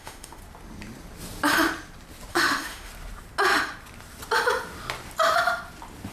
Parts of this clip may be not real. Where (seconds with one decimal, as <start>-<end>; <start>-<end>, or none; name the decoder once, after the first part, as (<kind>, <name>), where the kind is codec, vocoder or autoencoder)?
0.0-0.4 (autoencoder, DAC-VAE); 2.3-2.9